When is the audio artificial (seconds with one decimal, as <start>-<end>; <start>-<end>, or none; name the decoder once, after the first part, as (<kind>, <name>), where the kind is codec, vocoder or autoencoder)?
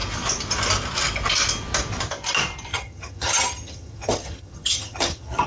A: 2.7-5.5 (vocoder, HiFi-GAN)